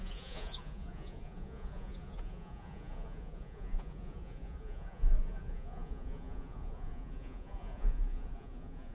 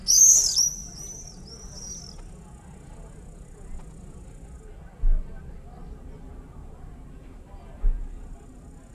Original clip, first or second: second